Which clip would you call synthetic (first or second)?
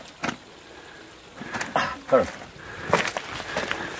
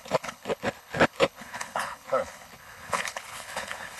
second